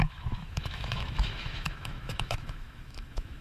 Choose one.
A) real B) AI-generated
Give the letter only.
B